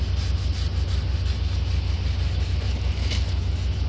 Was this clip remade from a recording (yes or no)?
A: no